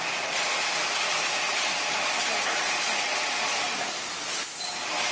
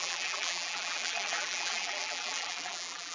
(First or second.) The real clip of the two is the first